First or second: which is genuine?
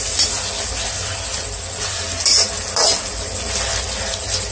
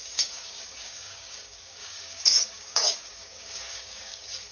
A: first